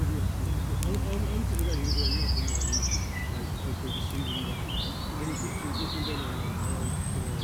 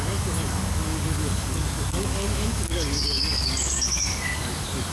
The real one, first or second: first